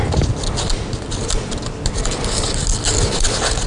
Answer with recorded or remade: recorded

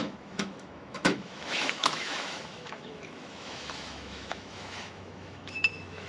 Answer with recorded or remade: remade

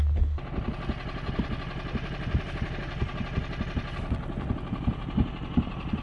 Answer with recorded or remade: recorded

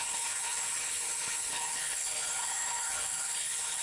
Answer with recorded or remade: remade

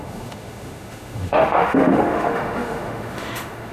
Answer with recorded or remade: remade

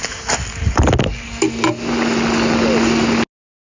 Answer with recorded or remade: recorded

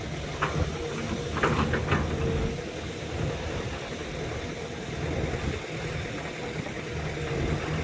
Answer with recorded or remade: recorded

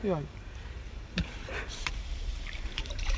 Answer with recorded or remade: remade